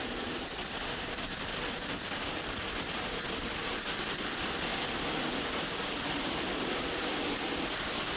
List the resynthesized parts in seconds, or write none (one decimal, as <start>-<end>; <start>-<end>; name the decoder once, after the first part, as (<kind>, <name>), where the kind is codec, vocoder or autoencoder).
none

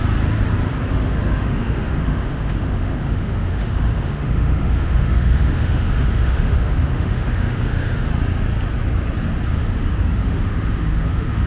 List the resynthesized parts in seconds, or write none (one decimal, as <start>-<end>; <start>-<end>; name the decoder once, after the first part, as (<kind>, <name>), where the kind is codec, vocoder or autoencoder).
0.9-8.1 (autoencoder, DAC-VAE); 9.5-11.5

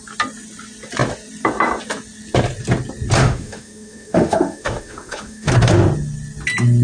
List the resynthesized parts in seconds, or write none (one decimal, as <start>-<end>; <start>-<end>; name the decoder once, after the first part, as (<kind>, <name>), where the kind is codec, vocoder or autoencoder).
3.2-5.5 (autoencoder, DAC-VAE)

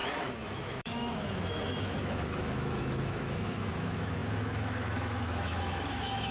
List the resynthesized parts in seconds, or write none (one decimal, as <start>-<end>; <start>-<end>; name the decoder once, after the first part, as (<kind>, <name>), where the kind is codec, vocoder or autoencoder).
0.0-6.3 (autoencoder, DAC-VAE)